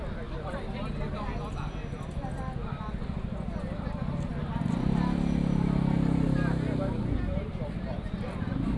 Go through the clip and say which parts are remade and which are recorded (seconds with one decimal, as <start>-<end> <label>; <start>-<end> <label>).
0.0-8.8 recorded

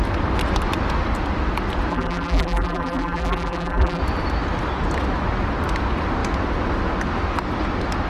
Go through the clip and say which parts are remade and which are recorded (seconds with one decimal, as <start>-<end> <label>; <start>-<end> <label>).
0.0-1.9 recorded; 1.9-4.0 remade; 4.0-8.1 recorded

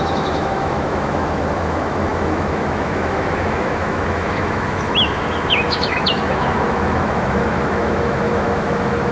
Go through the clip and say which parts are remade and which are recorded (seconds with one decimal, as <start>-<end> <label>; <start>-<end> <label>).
0.0-9.1 remade